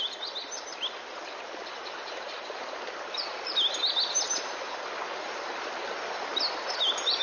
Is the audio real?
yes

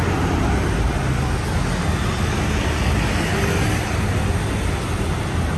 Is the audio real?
yes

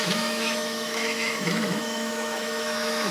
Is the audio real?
no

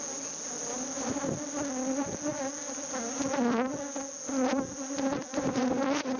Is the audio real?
yes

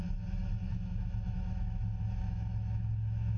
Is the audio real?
no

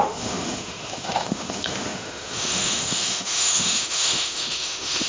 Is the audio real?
no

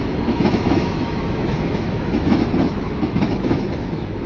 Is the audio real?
no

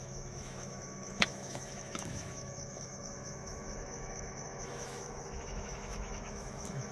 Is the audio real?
no